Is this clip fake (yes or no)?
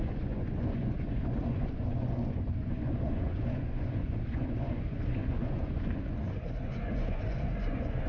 yes